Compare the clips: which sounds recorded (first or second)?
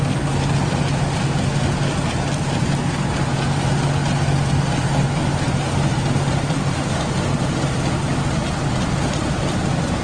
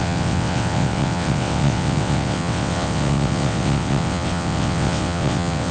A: first